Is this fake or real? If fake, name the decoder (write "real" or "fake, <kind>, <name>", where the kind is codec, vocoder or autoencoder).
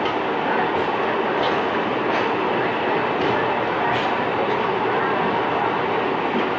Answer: real